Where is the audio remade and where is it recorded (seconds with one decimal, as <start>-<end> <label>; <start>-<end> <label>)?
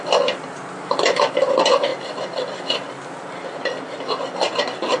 0.0-5.0 recorded